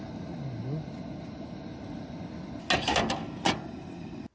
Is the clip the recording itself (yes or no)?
yes